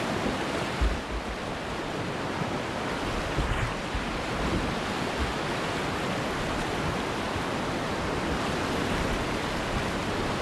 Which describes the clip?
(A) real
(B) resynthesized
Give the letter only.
A